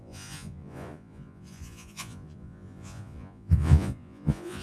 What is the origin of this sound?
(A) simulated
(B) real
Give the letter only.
A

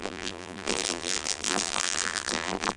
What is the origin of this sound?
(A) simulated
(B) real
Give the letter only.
A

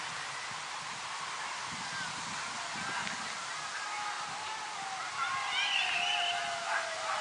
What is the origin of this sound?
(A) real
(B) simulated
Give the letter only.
A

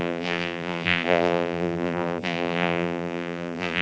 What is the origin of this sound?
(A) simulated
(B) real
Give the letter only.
A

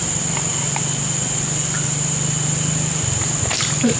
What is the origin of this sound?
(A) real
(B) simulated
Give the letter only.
B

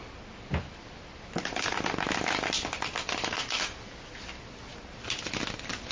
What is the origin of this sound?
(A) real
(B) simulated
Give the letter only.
A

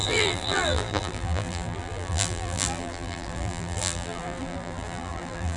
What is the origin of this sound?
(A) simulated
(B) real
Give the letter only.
A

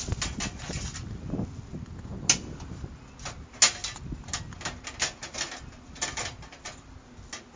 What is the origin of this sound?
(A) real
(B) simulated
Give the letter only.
A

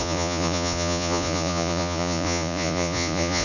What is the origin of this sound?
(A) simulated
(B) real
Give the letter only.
A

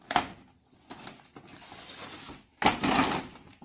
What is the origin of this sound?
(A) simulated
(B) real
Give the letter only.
B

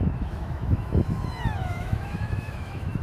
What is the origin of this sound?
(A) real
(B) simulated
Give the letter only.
B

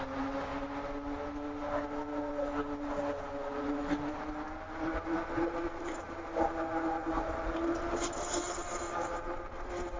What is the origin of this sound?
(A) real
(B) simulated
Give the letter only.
A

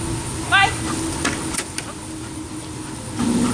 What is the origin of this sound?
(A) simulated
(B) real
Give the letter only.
B